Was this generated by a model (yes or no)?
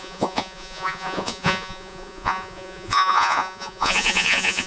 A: yes